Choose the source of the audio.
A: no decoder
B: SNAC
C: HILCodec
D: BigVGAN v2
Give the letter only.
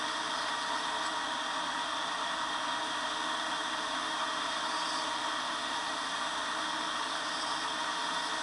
A